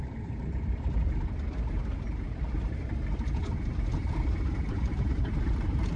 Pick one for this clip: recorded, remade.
remade